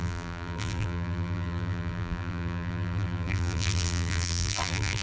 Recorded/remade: remade